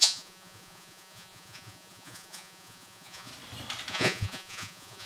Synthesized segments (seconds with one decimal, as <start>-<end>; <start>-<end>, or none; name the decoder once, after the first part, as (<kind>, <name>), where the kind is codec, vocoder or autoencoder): 0.0-3.3 (vocoder, Vocos); 3.9-5.1